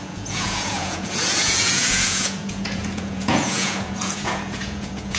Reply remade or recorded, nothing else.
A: remade